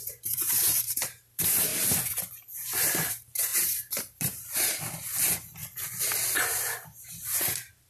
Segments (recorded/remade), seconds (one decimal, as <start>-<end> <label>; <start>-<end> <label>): 0.0-1.7 remade; 1.7-2.4 recorded; 2.4-5.6 remade; 5.6-6.4 recorded; 6.4-7.9 remade